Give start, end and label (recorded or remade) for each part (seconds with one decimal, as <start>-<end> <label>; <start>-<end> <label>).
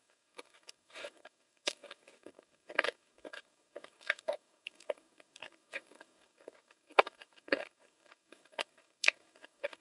0.0-9.8 remade